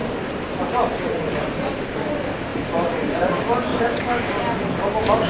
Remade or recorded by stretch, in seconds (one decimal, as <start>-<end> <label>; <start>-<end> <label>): 0.0-1.0 remade; 1.0-2.5 recorded; 2.5-3.3 remade; 3.3-3.7 recorded; 3.7-4.3 remade; 4.3-5.3 recorded